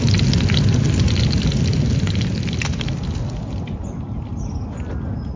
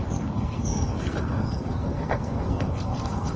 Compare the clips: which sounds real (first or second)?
first